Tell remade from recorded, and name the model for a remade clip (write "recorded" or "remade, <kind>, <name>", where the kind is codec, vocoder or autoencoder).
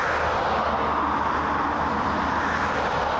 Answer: recorded